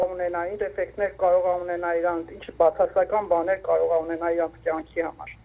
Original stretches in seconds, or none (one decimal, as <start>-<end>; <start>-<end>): 0.0-1.6; 2.4-5.4